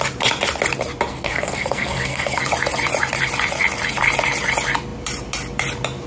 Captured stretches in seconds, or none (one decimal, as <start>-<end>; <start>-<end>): 0.0-1.1; 2.4-6.1